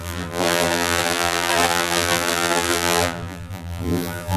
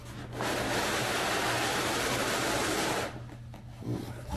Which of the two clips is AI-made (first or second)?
first